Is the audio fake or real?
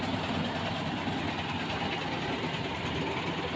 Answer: real